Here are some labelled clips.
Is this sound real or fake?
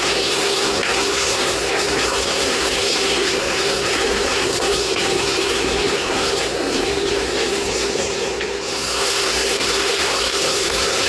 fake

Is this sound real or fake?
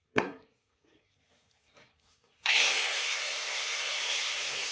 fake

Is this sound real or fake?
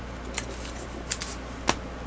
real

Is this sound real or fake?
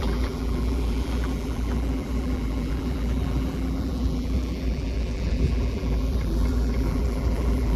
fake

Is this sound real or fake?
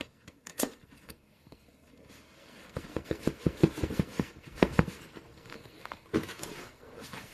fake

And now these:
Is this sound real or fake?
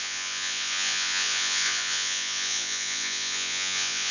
fake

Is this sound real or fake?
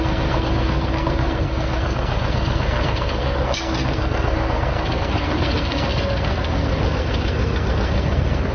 fake